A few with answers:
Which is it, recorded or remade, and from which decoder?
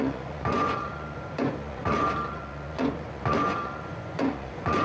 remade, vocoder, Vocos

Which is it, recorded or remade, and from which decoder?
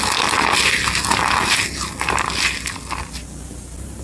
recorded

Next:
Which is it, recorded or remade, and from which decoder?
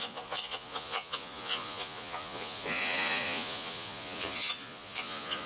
remade, vocoder, Vocos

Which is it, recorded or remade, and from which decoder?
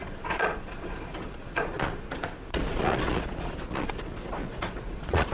remade, vocoder, Vocos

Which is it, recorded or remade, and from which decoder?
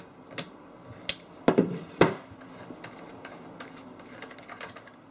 recorded